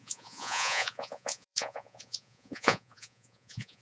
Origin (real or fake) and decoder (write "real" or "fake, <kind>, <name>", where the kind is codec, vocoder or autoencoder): fake, vocoder, Vocos